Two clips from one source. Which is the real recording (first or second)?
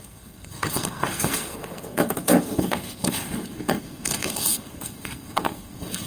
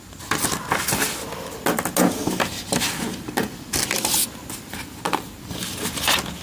second